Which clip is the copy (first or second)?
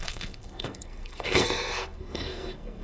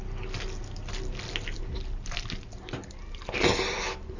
first